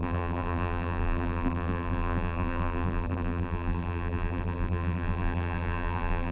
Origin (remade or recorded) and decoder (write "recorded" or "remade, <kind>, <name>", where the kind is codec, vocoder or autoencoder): remade, vocoder, BigVGAN v2